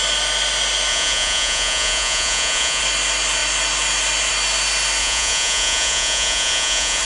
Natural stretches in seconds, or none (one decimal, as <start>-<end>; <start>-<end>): 0.0-0.9; 2.8-5.0